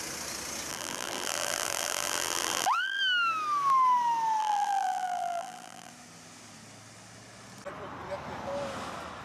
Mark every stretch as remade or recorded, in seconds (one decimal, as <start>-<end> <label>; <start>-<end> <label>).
0.0-0.7 recorded; 0.7-3.0 remade; 3.0-4.4 recorded; 4.4-5.9 remade; 5.9-9.2 recorded